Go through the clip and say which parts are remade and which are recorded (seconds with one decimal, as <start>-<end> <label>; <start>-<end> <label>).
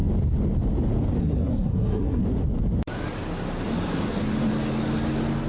0.0-1.2 recorded; 1.2-2.2 remade; 2.2-5.5 recorded